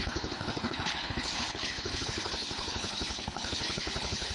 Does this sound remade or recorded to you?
remade